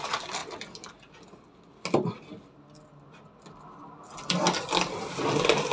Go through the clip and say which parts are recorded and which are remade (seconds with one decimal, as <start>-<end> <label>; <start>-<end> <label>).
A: 0.0-5.7 recorded